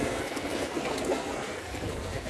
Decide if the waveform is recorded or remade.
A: remade